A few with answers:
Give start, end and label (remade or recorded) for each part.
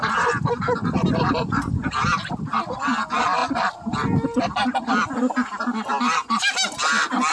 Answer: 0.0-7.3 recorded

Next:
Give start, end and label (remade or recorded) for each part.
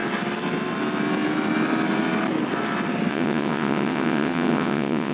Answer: 0.0-3.1 recorded; 3.1-5.1 remade